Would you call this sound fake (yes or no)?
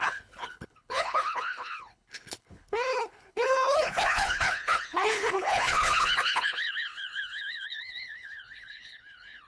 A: yes